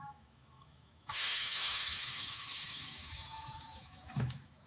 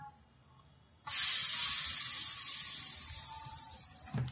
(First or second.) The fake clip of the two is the first